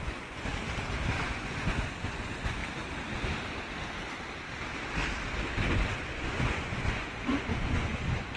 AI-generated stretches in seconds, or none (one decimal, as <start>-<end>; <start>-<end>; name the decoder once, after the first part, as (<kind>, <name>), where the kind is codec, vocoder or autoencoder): 0.0-0.5 (vocoder, Vocos); 1.1-2.6; 5.7-8.4